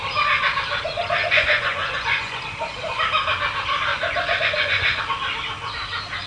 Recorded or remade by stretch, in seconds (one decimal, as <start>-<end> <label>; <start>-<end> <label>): 0.0-1.2 recorded; 1.2-2.4 remade; 2.4-3.9 recorded; 3.9-5.0 remade; 5.0-6.3 recorded